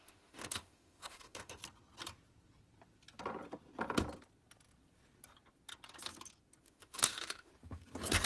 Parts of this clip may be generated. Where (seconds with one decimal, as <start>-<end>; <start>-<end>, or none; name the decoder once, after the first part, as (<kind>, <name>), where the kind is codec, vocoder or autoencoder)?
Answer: 0.0-1.6 (autoencoder, DAC-VAE); 6.6-7.5

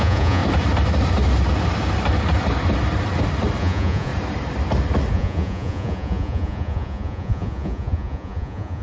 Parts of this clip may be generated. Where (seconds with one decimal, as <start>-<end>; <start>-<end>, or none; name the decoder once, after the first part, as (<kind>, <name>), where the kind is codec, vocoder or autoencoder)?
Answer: 0.0-0.4 (vocoder, Vocos); 3.6-4.1; 5.1-8.8

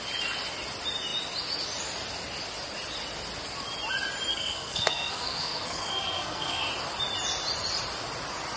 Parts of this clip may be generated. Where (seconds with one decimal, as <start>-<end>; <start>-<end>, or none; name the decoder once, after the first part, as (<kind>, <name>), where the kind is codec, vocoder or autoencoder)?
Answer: 4.3-6.7 (codec, SNAC)

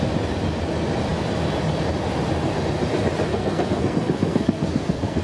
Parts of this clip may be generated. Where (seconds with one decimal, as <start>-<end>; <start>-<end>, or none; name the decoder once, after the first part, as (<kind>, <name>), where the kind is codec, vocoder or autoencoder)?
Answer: 3.3-5.2 (codec, SNAC)

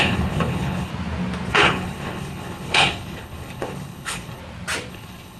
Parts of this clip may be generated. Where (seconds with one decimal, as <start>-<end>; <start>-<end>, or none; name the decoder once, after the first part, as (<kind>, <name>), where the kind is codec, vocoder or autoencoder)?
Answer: 0.0-0.9 (codec, HILCodec); 1.5-4.4; 4.9-5.4

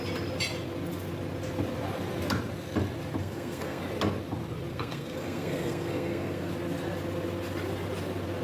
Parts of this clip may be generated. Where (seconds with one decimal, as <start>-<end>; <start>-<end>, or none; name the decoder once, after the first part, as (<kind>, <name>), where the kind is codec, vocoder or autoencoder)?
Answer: 3.2-3.8 (codec, SNAC); 4.7-6.5

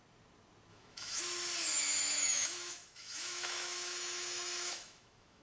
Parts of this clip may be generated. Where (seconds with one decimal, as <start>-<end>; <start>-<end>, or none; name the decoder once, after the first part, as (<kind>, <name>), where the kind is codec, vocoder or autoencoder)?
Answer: 0.7-1.2 (autoencoder, DAC-VAE); 2.0-5.4

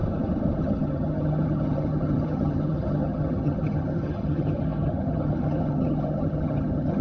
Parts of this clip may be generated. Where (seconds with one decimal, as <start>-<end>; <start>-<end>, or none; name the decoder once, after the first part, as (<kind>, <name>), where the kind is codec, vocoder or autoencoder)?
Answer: 0.6-7.0 (vocoder, HiFi-GAN)